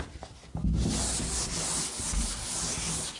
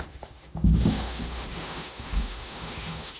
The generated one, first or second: second